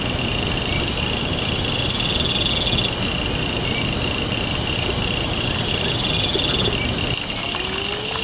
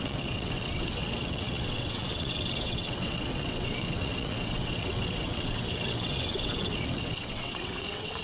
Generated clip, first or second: second